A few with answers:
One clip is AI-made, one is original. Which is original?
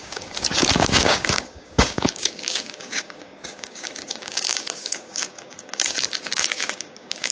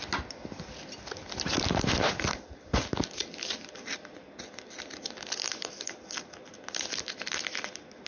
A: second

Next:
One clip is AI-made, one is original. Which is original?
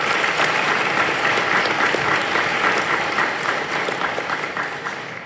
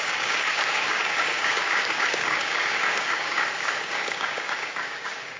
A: first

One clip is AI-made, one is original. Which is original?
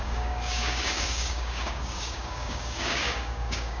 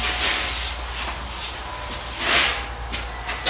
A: second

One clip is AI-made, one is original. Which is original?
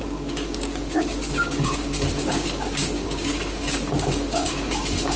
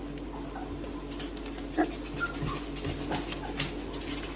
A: second